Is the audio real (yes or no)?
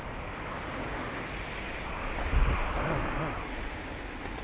yes